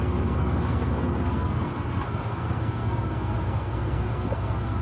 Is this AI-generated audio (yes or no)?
yes